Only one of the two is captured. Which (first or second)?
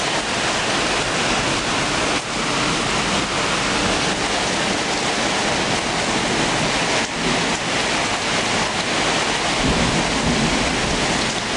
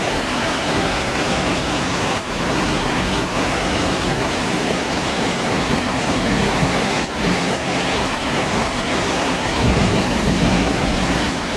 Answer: first